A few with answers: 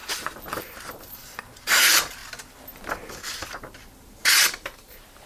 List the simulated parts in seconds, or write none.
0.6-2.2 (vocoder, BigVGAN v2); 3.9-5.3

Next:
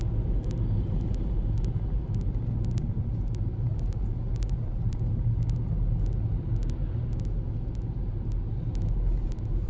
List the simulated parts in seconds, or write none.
none

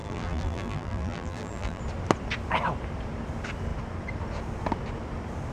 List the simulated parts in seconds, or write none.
0.0-1.8 (vocoder, BigVGAN v2)

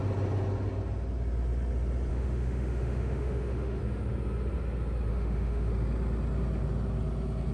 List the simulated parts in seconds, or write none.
2.1-3.8 (autoencoder, DAC-VAE); 5.1-5.7